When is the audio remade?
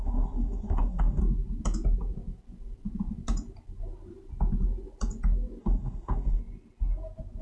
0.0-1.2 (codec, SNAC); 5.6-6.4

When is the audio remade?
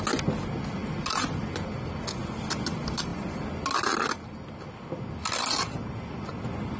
none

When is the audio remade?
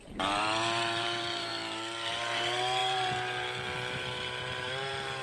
0.0-1.5 (vocoder, BigVGAN v2); 2.1-5.2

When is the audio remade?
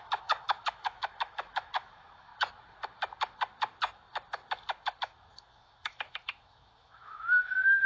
0.0-2.3 (autoencoder, DAC-VAE); 5.0-7.9